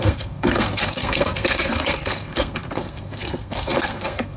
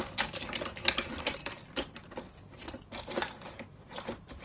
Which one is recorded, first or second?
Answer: second